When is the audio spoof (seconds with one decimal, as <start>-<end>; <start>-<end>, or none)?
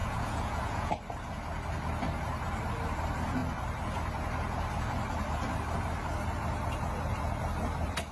0.0-0.9